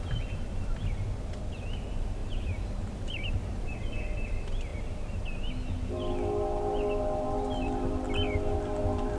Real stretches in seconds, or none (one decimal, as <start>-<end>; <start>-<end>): 0.0-2.2; 4.0-9.2